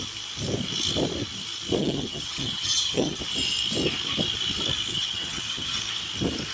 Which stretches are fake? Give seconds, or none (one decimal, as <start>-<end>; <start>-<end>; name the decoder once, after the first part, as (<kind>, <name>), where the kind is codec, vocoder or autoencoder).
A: 1.8-3.2 (vocoder, HiFi-GAN); 4.9-5.8